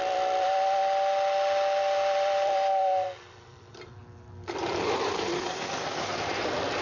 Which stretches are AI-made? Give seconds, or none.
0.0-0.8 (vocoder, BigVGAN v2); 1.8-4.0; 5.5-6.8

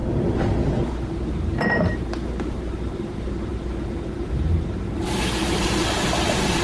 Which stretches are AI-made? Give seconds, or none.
0.9-6.6 (vocoder, BigVGAN v2)